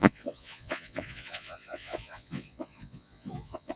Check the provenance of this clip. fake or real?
fake